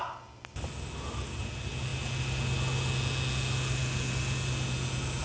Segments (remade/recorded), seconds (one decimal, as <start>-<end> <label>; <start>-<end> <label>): 0.0-5.2 recorded